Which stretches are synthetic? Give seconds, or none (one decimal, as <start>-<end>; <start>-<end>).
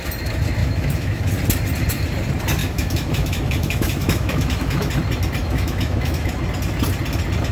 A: 0.6-1.3; 2.6-4.9; 5.4-6.3